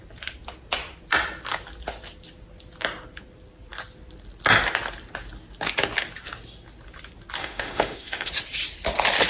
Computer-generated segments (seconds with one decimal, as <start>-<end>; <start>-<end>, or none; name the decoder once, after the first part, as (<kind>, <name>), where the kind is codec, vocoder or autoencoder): 7.4-8.3 (autoencoder, DAC-VAE)